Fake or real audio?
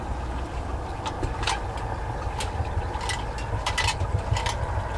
real